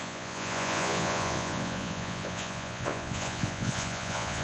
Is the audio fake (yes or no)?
yes